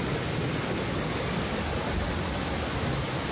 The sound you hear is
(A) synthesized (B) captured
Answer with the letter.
B